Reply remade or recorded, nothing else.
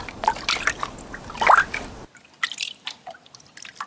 recorded